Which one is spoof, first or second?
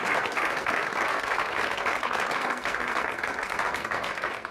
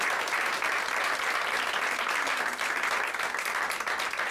first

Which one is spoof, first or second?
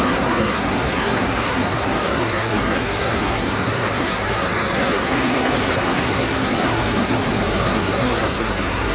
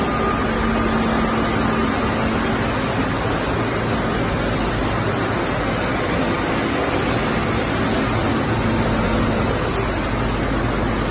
first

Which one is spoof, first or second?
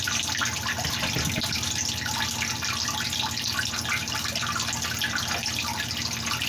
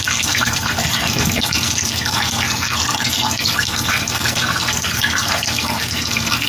second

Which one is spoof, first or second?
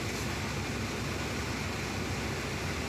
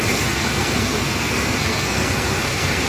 second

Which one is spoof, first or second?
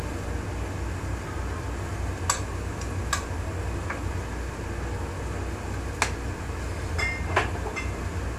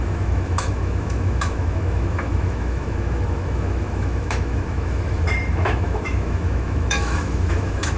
second